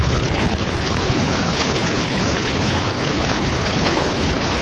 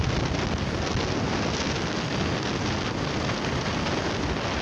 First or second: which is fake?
first